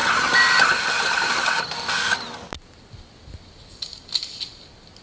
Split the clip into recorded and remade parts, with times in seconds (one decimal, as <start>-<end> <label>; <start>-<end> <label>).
0.0-5.0 recorded